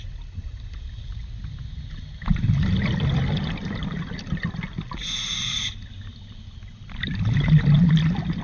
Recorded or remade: recorded